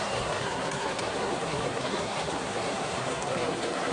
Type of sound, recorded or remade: remade